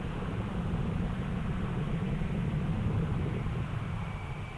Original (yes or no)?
no